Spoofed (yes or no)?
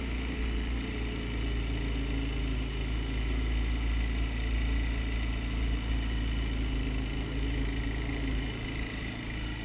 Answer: no